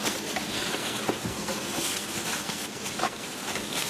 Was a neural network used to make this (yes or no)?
yes